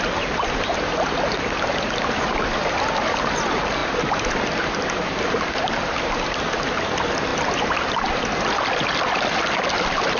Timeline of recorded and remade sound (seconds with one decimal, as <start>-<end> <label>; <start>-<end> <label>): 0.0-10.2 recorded